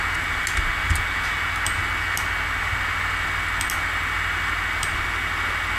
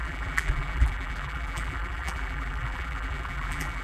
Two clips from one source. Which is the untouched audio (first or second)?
first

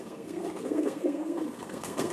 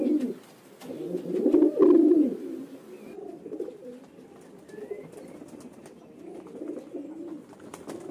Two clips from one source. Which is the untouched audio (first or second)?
second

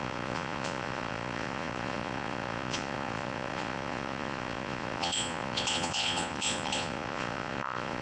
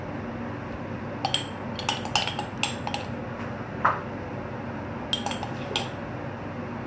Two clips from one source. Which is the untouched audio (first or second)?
second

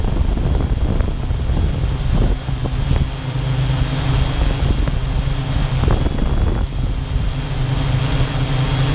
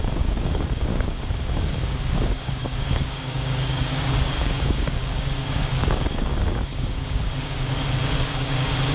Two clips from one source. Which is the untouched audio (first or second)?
first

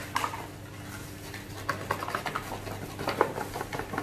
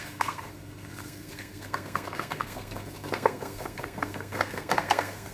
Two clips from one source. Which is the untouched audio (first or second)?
first